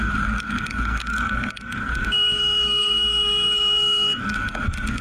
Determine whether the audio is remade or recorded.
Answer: remade